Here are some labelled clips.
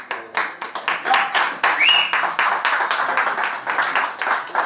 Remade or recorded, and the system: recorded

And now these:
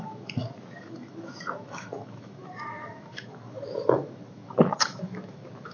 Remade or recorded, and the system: remade, autoencoder, DAC-VAE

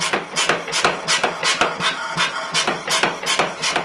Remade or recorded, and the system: recorded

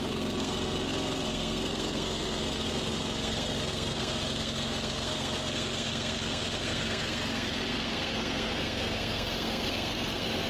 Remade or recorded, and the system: remade, codec, SNAC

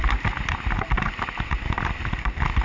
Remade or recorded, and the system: recorded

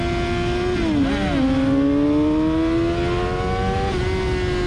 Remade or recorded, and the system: recorded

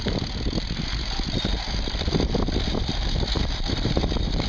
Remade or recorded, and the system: recorded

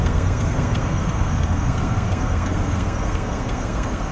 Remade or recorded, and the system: remade, codec, SNAC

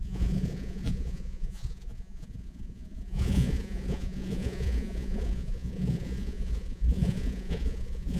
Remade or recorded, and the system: remade, vocoder, Vocos